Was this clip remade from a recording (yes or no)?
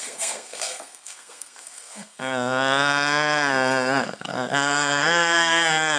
yes